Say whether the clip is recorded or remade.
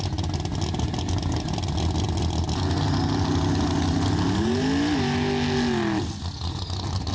recorded